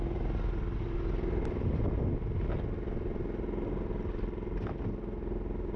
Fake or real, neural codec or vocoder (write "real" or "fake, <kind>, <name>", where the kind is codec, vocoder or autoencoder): real